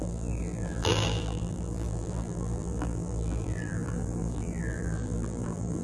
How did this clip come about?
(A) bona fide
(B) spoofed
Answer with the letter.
B